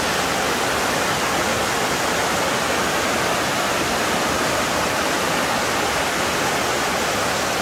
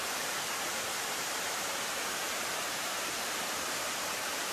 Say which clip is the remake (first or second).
second